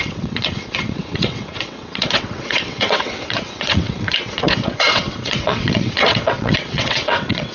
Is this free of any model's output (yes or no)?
no